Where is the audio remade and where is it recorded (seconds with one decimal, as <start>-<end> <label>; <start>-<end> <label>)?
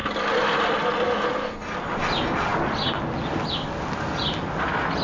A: 0.0-5.0 recorded